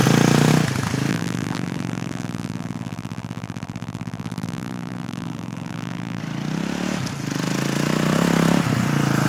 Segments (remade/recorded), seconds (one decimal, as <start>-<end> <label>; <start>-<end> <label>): 0.0-1.1 recorded; 1.1-6.2 remade; 6.2-9.3 recorded